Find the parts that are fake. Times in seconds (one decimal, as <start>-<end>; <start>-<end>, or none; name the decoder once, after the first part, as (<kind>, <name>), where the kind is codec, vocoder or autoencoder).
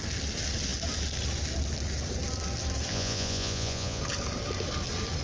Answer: 2.9-4.0 (vocoder, Vocos)